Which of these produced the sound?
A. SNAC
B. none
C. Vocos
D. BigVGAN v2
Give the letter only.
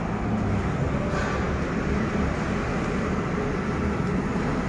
B